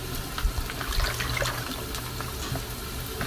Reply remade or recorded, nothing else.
recorded